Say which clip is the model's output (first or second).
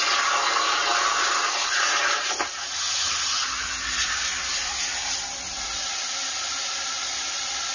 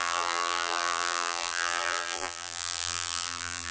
second